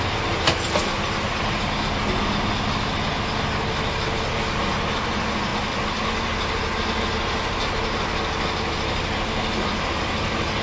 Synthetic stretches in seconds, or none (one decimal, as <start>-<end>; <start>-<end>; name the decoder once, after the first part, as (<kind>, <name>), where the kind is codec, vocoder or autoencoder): none